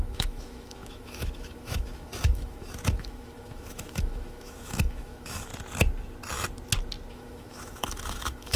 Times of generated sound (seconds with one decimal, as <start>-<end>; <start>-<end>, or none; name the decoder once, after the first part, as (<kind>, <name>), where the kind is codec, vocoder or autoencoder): 0.0-5.5 (autoencoder, DAC-VAE); 7.1-8.6